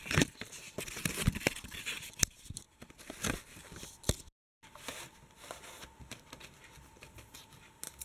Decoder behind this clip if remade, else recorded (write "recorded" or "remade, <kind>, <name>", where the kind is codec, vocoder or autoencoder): remade, vocoder, BigVGAN v2